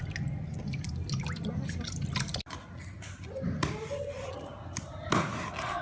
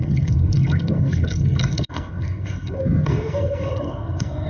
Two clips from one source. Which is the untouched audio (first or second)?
first